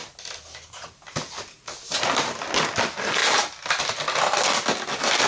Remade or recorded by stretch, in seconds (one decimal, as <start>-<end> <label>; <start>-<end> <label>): 0.0-5.3 recorded